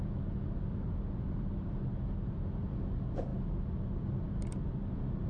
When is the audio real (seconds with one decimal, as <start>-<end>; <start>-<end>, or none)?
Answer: 0.0-5.3

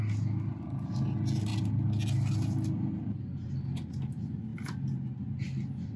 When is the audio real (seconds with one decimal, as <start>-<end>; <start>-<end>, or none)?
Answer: 0.0-6.0